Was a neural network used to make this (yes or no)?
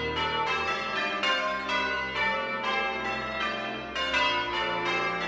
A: no